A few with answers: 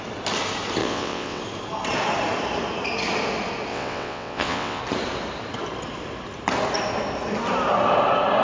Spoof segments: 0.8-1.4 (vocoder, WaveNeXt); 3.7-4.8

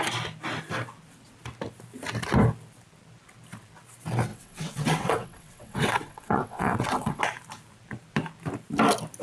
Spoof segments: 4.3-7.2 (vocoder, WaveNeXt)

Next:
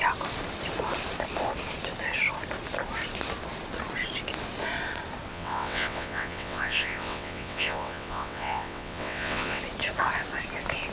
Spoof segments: 5.3-9.6 (vocoder, WaveNeXt)